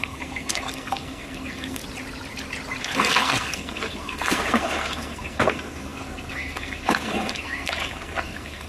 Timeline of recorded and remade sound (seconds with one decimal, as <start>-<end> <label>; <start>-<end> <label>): 0.0-1.8 remade; 1.8-2.8 recorded; 2.8-8.7 remade